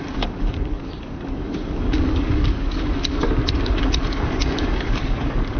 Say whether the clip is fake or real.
fake